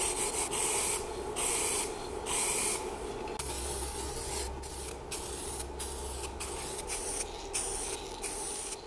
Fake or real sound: real